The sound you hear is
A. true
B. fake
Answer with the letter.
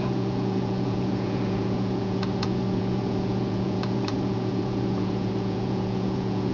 B